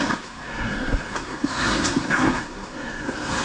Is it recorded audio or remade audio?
remade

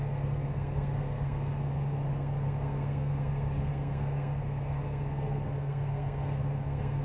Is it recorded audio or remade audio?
remade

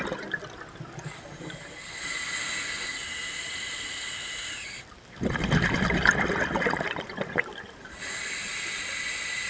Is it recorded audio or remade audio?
recorded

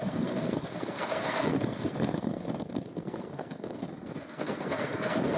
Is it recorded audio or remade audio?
remade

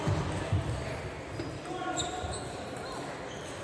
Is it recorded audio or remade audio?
recorded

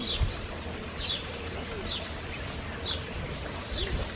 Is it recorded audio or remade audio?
recorded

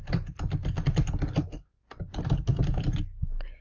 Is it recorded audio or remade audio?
recorded